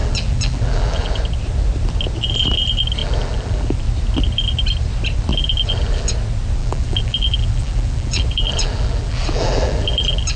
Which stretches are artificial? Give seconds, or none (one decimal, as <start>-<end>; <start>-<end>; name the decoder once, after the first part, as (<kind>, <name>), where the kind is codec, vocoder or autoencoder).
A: 0.0-1.2 (vocoder, BigVGAN v2); 3.0-3.8; 5.3-6.1; 6.6-10.4